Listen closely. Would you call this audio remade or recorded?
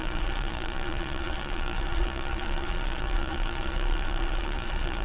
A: remade